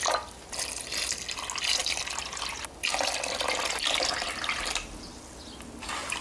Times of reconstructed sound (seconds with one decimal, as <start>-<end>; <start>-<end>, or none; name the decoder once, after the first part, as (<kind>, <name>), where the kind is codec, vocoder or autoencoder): none